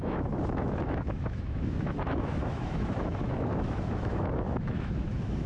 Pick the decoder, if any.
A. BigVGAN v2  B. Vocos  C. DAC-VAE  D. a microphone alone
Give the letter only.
C